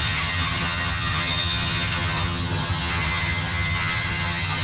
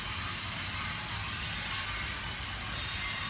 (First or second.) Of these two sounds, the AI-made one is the first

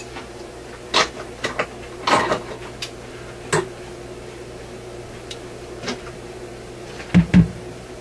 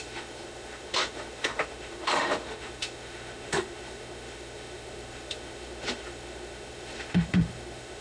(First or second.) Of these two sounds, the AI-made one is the second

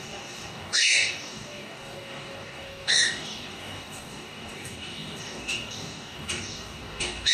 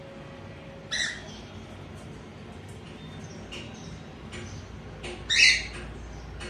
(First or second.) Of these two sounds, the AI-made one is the first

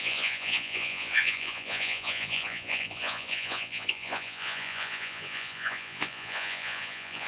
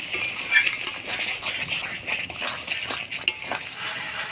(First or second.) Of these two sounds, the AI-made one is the first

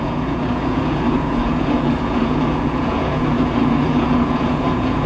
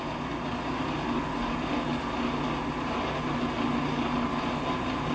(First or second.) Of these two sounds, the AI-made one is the first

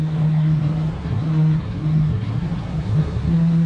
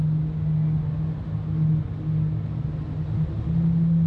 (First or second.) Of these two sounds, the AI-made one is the first